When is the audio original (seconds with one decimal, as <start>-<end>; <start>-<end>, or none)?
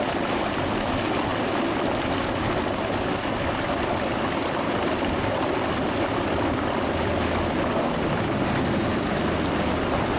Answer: 0.0-10.2